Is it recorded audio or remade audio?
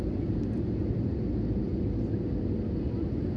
recorded